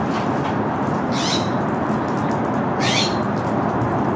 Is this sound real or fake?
real